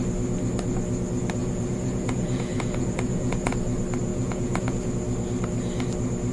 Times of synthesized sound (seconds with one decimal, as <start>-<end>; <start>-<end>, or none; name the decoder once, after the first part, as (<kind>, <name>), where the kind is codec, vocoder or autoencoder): 1.4-3.5 (vocoder, Vocos); 4.1-4.9